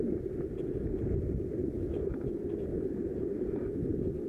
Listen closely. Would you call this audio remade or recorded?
recorded